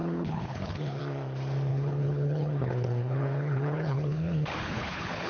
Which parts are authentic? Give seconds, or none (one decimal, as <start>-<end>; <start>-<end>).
1.0-1.7